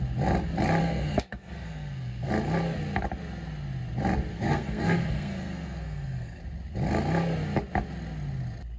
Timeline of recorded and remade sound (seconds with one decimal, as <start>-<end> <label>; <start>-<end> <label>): 0.0-0.8 recorded; 0.8-2.3 remade; 2.3-4.3 recorded; 4.3-6.4 remade; 6.4-8.8 recorded